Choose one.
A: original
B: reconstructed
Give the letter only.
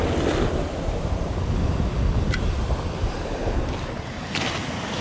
A